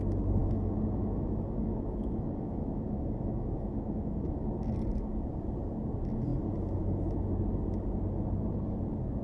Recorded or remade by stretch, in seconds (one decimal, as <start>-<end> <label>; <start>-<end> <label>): 0.0-0.4 recorded; 0.4-4.6 remade; 4.6-9.2 recorded